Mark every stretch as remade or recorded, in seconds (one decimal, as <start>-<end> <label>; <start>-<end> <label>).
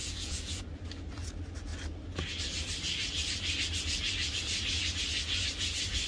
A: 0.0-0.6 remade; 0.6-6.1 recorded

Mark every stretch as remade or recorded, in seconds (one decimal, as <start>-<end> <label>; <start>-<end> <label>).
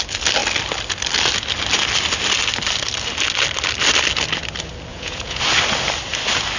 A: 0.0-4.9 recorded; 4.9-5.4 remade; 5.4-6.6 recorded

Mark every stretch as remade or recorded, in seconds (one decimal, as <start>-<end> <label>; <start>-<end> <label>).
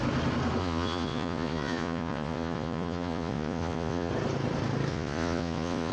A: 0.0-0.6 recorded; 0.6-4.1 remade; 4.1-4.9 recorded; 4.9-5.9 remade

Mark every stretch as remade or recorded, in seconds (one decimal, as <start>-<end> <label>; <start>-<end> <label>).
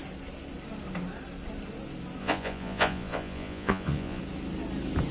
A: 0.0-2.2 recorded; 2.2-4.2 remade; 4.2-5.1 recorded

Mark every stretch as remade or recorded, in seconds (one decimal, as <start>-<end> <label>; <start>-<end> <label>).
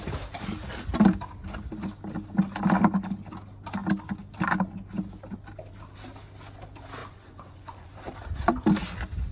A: 0.0-7.0 recorded; 7.0-7.9 remade; 7.9-9.3 recorded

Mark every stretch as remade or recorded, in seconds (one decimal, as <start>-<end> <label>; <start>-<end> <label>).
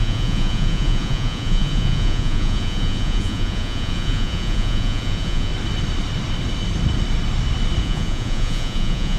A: 0.0-5.5 remade; 5.5-7.8 recorded; 7.8-9.2 remade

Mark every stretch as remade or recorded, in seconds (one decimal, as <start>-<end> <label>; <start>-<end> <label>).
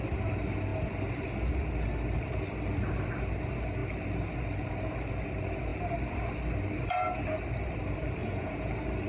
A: 0.0-8.2 recorded; 8.2-8.7 remade; 8.7-9.1 recorded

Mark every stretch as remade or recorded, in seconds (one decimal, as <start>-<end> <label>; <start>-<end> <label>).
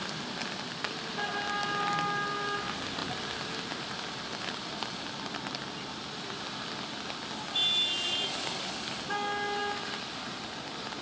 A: 0.0-11.0 recorded